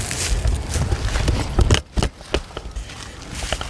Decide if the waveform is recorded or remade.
recorded